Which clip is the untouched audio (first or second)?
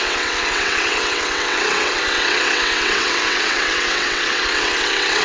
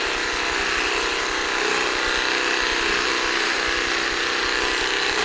second